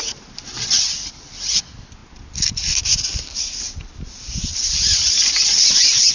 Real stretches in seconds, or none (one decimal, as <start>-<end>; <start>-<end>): 0.0-6.1